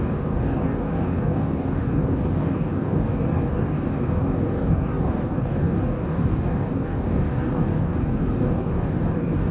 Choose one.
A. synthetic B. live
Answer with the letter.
A